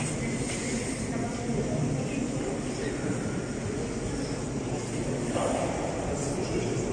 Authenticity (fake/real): real